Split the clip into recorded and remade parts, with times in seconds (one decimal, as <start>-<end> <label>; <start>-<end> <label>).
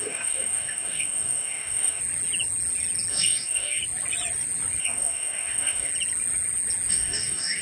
0.0-2.0 remade; 2.0-3.1 recorded; 3.1-3.8 remade; 3.8-4.8 recorded; 4.8-5.9 remade; 5.9-6.9 recorded; 6.9-7.6 remade